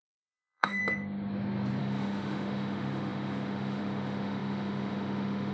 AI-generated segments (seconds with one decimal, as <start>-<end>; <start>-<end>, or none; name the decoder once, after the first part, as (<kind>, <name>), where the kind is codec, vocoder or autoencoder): 0.0-0.8 (autoencoder, DAC-VAE); 1.8-5.5